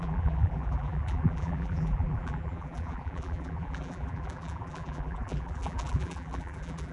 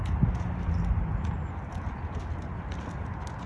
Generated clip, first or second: first